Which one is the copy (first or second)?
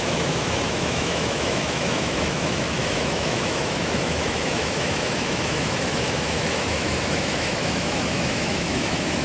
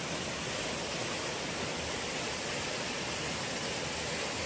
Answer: first